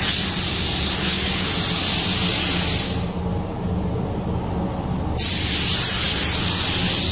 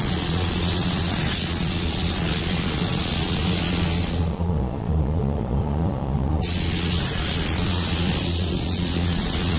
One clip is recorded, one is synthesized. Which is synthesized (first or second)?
second